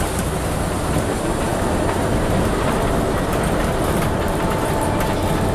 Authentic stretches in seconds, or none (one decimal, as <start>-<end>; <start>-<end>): 0.0-5.5